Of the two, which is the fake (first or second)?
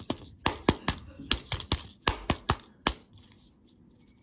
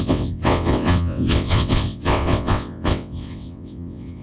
second